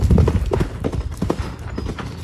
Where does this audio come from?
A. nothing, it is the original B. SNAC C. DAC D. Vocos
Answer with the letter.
A